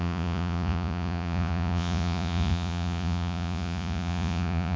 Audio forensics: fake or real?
fake